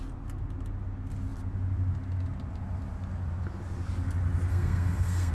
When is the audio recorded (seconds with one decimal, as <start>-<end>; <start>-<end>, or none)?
0.0-4.5